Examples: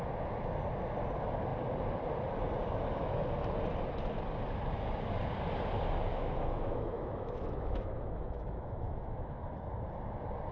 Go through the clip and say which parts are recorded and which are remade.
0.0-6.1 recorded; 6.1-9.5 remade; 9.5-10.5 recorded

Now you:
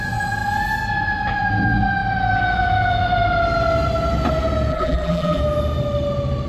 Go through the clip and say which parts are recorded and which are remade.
0.0-4.7 recorded; 4.7-5.4 remade; 5.4-6.5 recorded

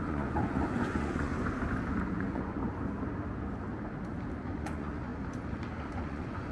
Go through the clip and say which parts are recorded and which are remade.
0.0-1.3 remade; 1.3-2.1 recorded; 2.1-2.6 remade; 2.6-4.6 recorded; 4.6-5.1 remade; 5.1-5.8 recorded; 5.8-6.5 remade

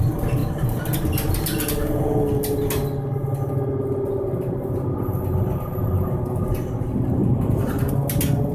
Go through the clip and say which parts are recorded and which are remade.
0.0-7.2 recorded; 7.2-7.9 remade; 7.9-8.5 recorded

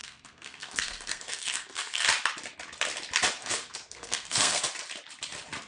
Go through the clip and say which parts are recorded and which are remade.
0.0-2.0 remade; 2.0-3.4 recorded; 3.4-4.6 remade; 4.6-5.7 recorded